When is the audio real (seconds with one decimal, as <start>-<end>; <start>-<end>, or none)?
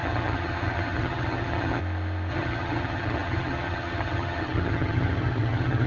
1.8-2.3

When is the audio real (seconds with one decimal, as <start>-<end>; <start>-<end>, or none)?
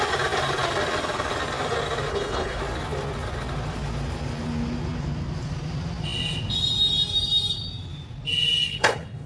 0.0-2.1; 2.6-8.7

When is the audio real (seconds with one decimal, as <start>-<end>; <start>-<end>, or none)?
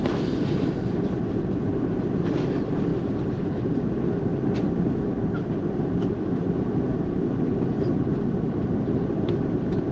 7.5-8.3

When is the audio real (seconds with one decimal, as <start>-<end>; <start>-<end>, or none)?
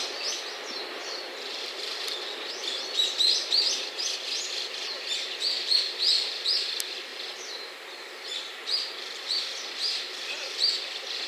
0.0-1.0; 2.2-2.6; 3.3-7.1; 9.4-11.3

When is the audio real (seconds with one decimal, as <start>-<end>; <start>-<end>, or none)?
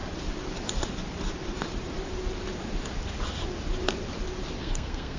0.0-4.6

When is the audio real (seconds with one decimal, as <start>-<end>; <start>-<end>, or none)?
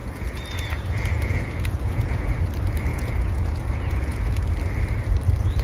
2.4-2.9; 4.4-5.6